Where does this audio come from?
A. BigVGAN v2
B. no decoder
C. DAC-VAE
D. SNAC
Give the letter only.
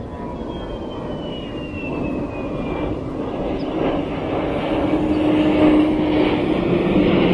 B